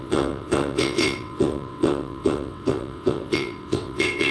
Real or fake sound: fake